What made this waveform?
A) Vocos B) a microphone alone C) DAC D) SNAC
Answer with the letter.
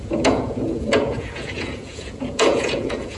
A